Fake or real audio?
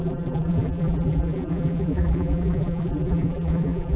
fake